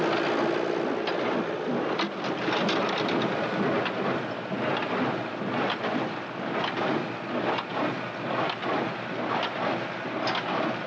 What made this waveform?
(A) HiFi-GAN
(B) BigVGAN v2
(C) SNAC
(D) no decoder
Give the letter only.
D